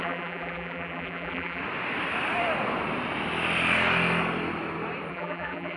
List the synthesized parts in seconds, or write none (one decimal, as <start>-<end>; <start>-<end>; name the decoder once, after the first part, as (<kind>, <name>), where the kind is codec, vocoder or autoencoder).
0.0-1.6 (vocoder, BigVGAN v2); 5.1-5.8